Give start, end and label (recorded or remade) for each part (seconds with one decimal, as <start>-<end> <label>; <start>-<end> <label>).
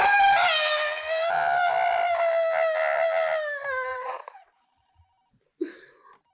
0.0-3.9 recorded; 3.9-5.0 remade; 5.0-6.3 recorded